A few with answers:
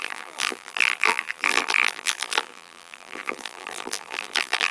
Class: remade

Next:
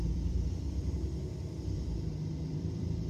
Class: remade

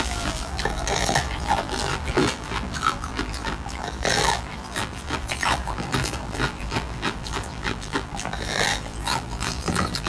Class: remade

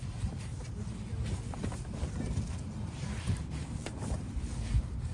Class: remade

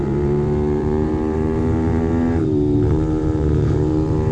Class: remade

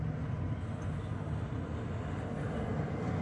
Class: recorded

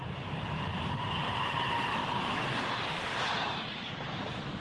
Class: remade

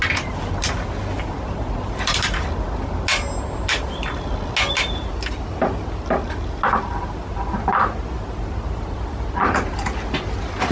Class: recorded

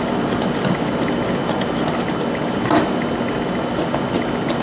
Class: recorded